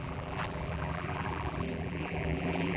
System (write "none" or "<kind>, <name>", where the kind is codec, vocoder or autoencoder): vocoder, BigVGAN v2